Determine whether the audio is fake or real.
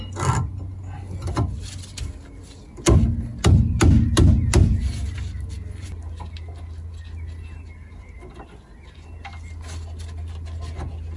real